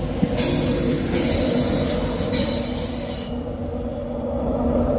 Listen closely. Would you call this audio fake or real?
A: real